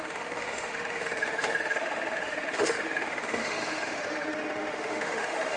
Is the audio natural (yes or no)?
no